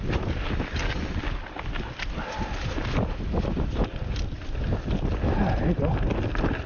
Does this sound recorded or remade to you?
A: recorded